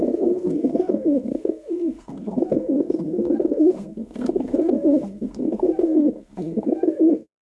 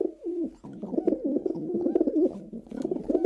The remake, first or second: first